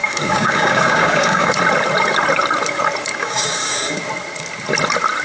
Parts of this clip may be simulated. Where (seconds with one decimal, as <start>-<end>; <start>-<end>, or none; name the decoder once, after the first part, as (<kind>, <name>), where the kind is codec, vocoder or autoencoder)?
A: 0.0-1.5 (codec, DAC); 3.1-4.0